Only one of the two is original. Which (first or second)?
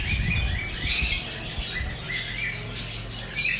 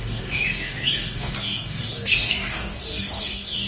first